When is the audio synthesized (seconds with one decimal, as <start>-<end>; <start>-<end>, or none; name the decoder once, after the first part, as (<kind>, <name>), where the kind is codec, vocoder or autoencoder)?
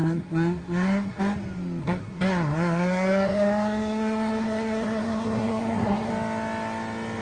0.0-1.2 (codec, SNAC); 1.8-6.1